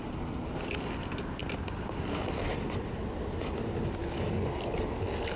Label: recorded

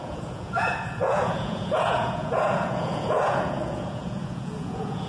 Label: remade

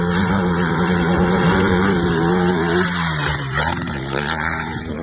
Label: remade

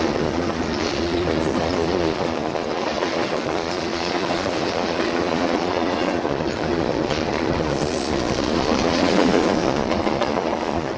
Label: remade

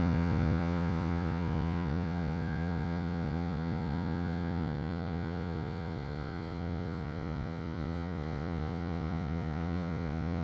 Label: remade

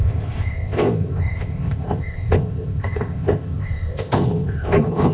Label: remade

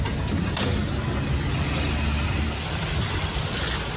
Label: recorded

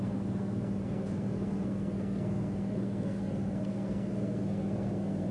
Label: remade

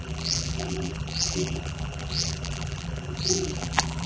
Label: remade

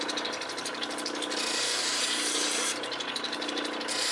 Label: recorded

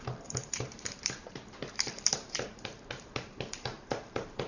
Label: remade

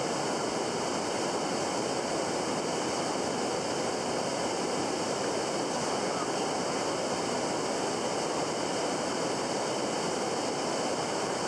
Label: recorded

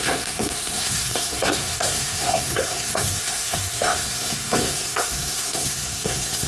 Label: remade